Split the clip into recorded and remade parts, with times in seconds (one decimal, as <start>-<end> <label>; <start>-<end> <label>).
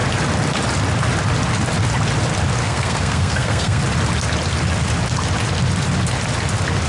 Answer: 0.0-2.6 recorded; 2.6-3.8 remade; 3.8-6.9 recorded